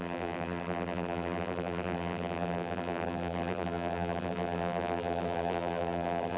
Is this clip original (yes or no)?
no